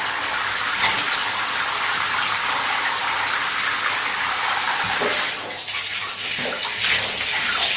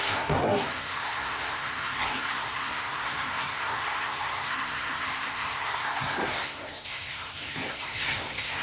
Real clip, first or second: first